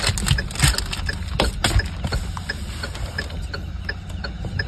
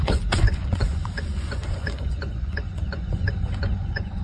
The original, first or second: first